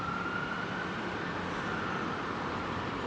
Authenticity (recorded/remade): remade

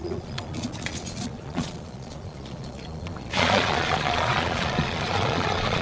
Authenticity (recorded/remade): remade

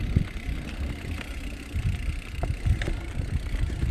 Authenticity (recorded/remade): recorded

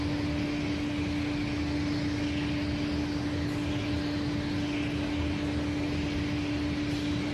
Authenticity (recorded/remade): recorded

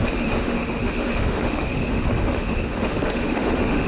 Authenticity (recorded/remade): remade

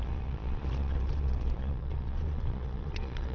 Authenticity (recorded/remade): remade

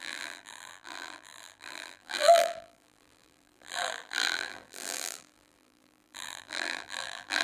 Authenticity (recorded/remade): remade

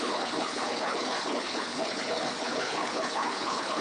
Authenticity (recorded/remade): remade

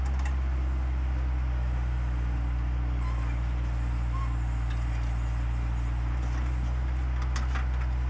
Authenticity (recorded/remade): recorded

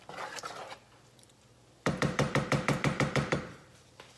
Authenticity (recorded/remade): remade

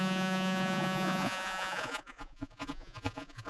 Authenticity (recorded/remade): remade